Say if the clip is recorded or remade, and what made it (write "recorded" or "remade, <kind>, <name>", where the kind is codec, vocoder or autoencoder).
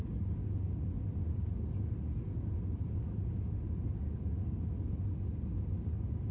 recorded